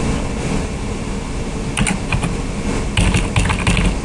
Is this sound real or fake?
real